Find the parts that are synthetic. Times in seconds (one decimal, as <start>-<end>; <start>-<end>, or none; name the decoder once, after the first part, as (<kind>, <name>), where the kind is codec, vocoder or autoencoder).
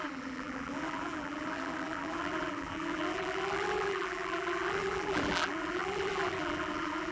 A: 0.0-7.1 (vocoder, BigVGAN v2)